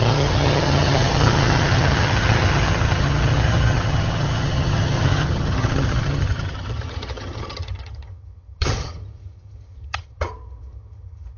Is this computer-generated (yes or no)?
yes